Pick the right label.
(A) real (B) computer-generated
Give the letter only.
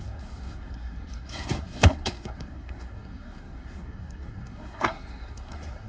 B